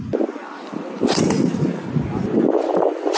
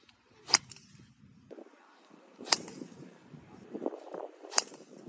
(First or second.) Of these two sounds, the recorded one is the first